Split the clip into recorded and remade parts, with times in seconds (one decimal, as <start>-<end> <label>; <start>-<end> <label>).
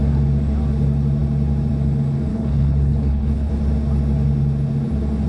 0.0-2.3 recorded; 2.3-3.5 remade; 3.5-5.3 recorded